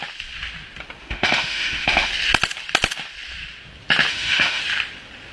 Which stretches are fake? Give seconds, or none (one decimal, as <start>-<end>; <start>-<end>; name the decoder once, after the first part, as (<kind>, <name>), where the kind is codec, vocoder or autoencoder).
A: 1.0-2.1 (autoencoder, DAC-VAE); 4.1-4.6